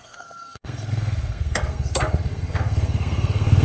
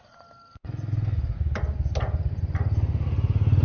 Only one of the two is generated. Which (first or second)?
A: first